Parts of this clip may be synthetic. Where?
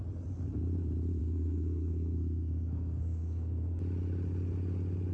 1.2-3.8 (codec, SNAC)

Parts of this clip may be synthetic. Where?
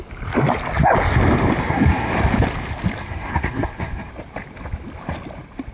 1.6-2.1 (codec, SNAC); 3.0-4.1